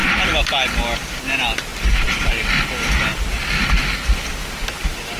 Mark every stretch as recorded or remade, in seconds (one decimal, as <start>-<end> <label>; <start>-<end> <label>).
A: 0.0-0.5 remade; 0.5-1.7 recorded; 1.7-2.3 remade; 2.3-5.2 recorded

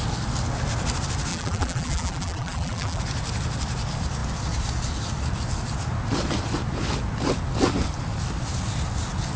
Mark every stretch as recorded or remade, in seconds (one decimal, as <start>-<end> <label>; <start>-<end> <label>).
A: 0.0-1.3 recorded; 1.3-3.0 remade; 3.0-9.4 recorded

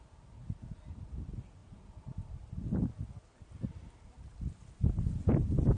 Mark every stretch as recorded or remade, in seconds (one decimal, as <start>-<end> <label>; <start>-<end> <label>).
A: 0.0-5.8 recorded

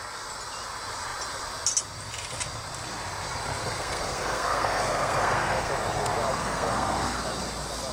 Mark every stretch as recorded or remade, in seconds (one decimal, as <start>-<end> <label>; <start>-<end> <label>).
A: 0.0-3.6 recorded; 3.6-5.7 remade; 5.7-6.4 recorded; 6.4-7.2 remade; 7.2-7.9 recorded

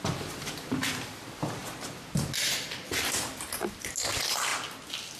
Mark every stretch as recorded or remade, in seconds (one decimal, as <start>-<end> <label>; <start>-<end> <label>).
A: 0.0-5.2 recorded

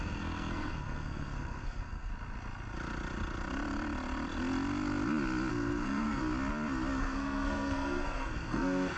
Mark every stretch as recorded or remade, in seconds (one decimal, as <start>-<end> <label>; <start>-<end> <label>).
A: 0.0-2.1 remade; 2.1-5.5 recorded; 5.5-6.2 remade; 6.2-7.0 recorded; 7.0-9.0 remade

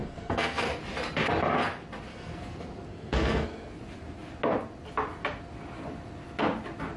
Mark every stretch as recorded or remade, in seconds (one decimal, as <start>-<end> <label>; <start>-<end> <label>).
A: 0.0-0.7 remade; 0.7-2.1 recorded; 2.1-3.8 remade; 3.8-7.0 recorded

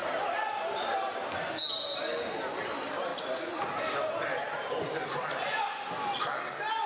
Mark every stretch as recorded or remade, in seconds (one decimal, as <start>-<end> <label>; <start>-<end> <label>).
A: 0.0-6.9 recorded